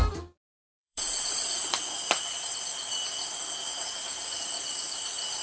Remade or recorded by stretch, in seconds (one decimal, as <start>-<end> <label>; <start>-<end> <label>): 0.0-0.6 recorded; 0.6-1.8 remade; 1.8-3.7 recorded; 3.7-4.4 remade; 4.4-5.4 recorded